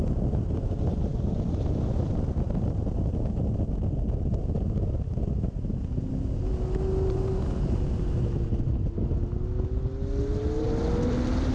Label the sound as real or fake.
real